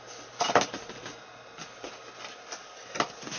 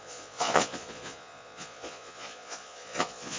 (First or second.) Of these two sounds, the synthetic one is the second